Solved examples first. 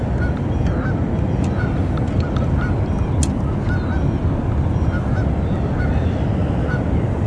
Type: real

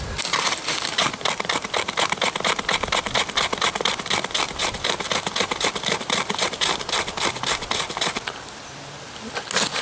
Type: real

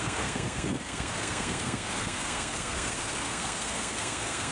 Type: fake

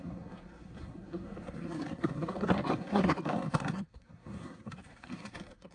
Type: fake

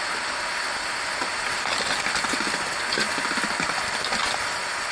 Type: real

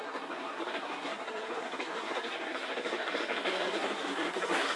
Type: fake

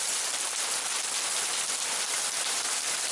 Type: real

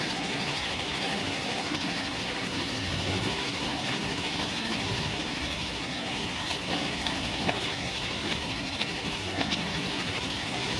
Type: fake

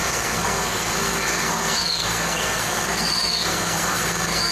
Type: fake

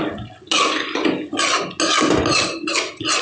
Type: real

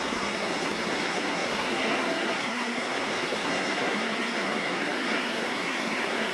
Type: fake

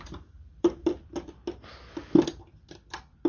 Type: real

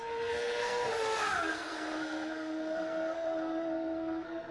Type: fake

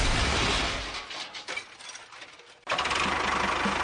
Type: real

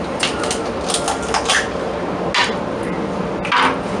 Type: real